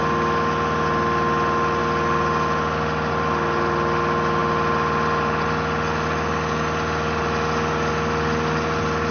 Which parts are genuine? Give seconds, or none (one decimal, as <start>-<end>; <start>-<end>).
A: 0.0-9.1